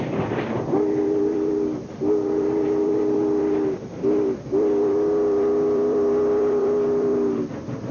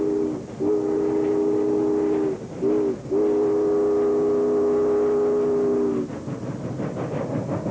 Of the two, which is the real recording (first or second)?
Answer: second